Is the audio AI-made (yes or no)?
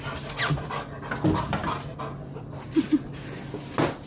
no